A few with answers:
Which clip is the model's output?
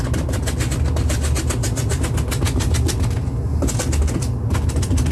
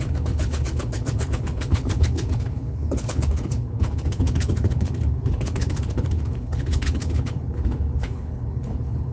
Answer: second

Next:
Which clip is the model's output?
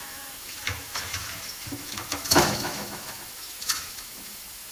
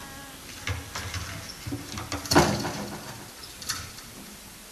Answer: first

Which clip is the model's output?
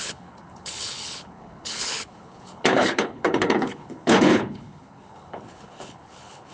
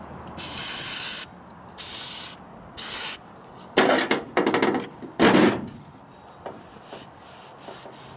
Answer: first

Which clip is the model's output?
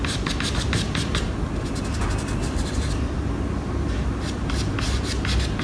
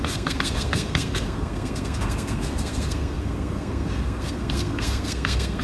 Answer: second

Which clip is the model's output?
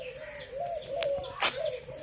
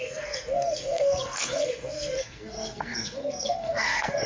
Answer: second